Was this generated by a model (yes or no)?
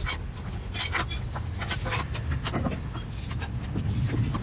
no